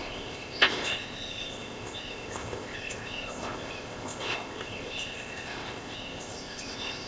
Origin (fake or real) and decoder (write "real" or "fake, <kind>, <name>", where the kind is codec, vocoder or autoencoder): fake, codec, ZipCodec